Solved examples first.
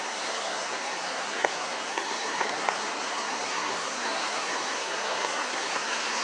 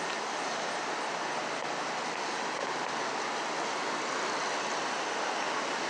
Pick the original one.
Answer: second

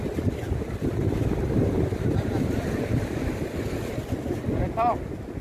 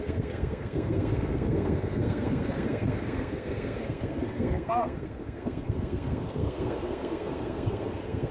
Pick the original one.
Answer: first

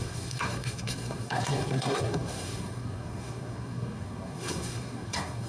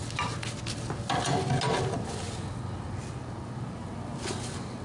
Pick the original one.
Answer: second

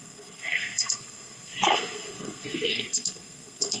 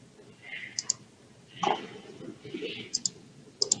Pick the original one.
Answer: second